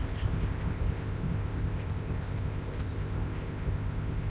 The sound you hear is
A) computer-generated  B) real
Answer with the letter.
A